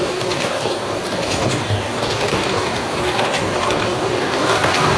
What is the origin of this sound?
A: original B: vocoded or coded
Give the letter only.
B